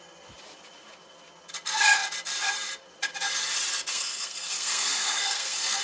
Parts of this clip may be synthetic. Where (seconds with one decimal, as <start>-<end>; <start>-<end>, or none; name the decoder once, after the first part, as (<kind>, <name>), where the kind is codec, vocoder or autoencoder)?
3.9-5.8 (codec, SNAC)